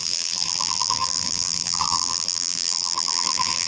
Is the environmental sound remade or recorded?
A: remade